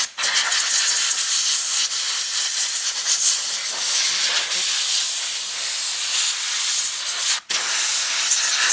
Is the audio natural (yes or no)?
yes